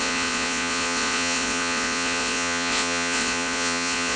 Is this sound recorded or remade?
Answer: remade